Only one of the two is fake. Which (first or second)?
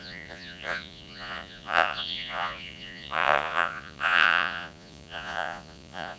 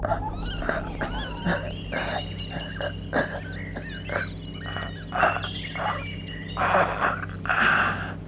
first